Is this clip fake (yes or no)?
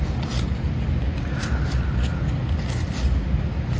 no